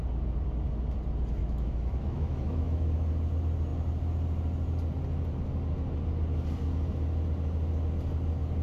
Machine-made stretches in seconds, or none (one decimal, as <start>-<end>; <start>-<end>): 1.4-2.9